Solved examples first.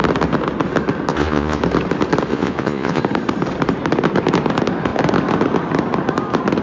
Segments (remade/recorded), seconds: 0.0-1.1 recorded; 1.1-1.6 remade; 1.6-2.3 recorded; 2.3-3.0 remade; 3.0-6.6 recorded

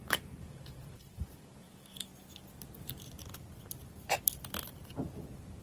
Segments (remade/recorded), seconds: 0.0-2.1 remade; 2.1-5.6 recorded

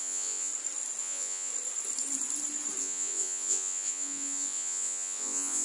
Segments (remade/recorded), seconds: 0.0-0.5 remade; 0.5-1.0 recorded; 1.0-1.5 remade; 1.5-2.8 recorded; 2.8-5.6 remade

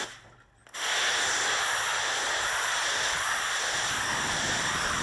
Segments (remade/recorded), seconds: 0.0-5.0 recorded

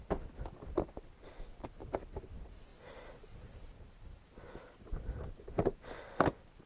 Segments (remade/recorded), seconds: 0.0-6.7 recorded

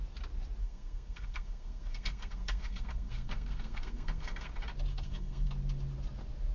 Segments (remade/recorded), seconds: 0.0-0.6 recorded; 0.6-4.5 remade; 4.5-4.9 recorded; 4.9-5.5 remade; 5.5-6.5 recorded

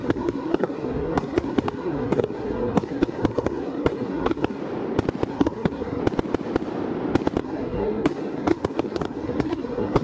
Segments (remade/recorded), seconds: 0.0-4.6 remade; 4.6-5.3 recorded; 5.3-6.0 remade; 6.0-7.4 recorded; 7.4-10.0 remade

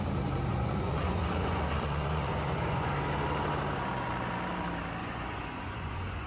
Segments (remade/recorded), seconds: 0.0-0.5 recorded; 0.5-2.9 remade; 2.9-5.0 recorded; 5.0-6.3 remade